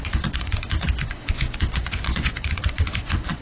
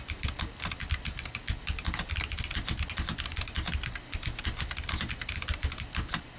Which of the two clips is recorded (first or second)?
second